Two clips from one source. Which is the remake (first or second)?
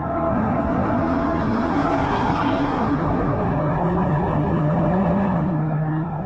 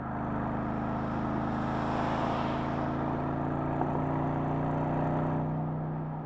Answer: first